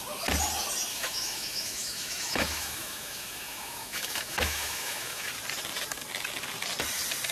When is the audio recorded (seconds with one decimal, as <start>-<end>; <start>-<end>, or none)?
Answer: 0.0-0.9; 5.3-7.3

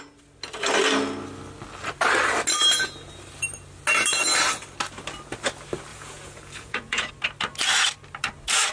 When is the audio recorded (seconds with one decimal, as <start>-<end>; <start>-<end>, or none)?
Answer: 0.0-5.9; 7.1-8.7

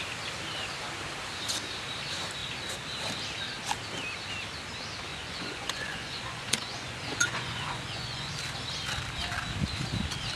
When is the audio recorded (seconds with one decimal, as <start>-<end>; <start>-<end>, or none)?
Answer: 0.0-5.1; 8.3-10.4

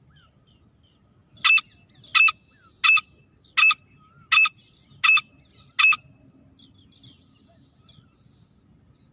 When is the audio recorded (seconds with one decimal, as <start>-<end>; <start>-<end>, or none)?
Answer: 0.0-9.1

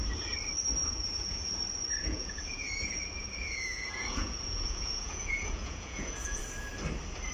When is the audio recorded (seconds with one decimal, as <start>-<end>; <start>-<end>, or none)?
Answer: 0.0-0.8; 1.5-2.0; 6.4-7.3

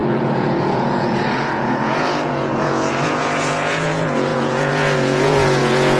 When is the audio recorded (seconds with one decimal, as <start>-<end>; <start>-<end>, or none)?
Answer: none

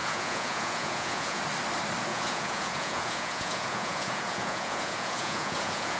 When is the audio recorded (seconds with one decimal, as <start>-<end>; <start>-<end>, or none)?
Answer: 1.4-2.1